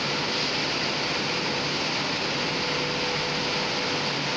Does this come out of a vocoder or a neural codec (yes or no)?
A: no